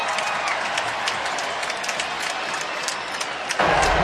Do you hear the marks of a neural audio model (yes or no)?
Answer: no